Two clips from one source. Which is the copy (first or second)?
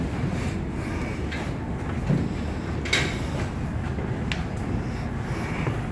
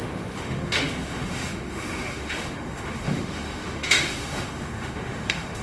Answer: second